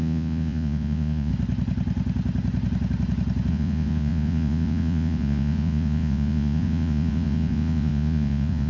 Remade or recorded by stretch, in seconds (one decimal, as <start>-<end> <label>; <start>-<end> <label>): 0.0-1.3 remade; 1.3-3.5 recorded; 3.5-8.7 remade

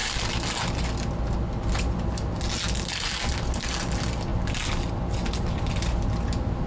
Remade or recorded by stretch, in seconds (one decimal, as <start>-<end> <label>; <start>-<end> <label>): 0.0-6.7 recorded

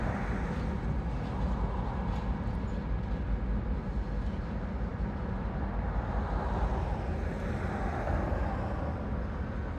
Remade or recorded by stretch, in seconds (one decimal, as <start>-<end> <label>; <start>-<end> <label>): 0.0-9.8 recorded

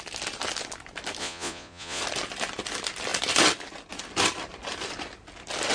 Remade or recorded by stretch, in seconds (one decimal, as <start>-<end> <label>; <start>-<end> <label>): 0.0-1.2 recorded; 1.2-2.0 remade; 2.0-5.7 recorded

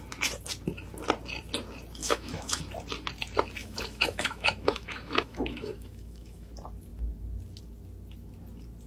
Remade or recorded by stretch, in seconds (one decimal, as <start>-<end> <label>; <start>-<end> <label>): 0.0-2.0 recorded; 2.0-2.6 remade; 2.6-3.6 recorded; 3.6-6.5 remade; 6.5-8.9 recorded

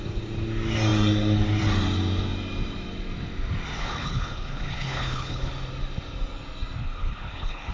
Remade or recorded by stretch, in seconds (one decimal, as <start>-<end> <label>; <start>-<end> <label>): 0.0-3.8 recorded; 3.8-5.5 remade; 5.5-6.8 recorded; 6.8-7.7 remade